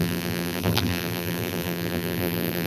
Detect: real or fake fake